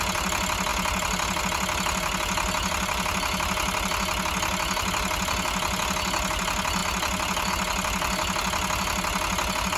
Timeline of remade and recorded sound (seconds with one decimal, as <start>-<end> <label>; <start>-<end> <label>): 0.0-9.8 recorded